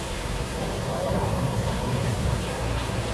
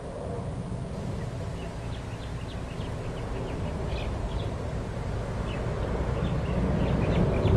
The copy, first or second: first